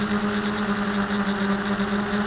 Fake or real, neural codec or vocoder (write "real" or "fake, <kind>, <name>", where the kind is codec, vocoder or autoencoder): real